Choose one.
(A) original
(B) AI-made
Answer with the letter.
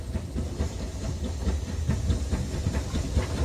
A